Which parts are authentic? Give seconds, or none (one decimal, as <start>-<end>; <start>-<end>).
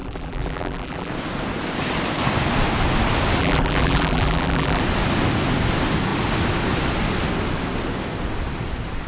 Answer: 1.1-3.4; 4.8-9.1